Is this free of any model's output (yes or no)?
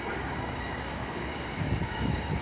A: no